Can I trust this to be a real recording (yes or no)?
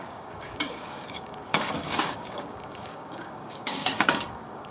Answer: no